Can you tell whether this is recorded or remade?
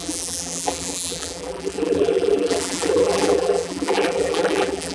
remade